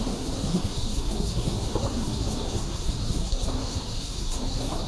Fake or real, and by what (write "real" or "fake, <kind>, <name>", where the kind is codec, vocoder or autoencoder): fake, codec, SNAC